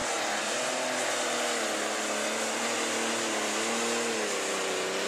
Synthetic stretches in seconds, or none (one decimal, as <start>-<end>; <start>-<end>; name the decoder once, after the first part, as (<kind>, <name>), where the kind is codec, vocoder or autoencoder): none